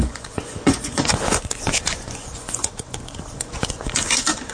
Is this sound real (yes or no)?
no